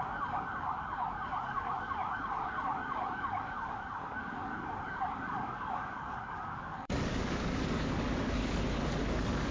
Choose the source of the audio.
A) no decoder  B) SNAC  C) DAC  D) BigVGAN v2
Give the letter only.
C